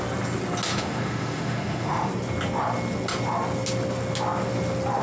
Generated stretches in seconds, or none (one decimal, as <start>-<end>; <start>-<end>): 0.7-2.1